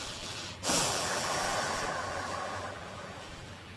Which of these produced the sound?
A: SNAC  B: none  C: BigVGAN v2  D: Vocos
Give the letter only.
C